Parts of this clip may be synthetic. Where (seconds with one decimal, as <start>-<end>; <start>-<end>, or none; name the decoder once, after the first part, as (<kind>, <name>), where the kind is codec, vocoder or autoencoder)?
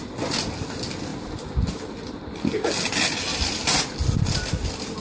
none